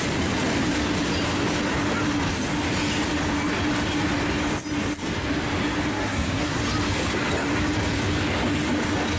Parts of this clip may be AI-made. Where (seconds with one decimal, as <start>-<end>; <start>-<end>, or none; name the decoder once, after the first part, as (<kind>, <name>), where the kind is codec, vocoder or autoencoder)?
5.9-6.6 (codec, SNAC)